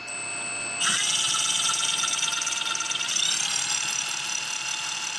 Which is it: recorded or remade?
recorded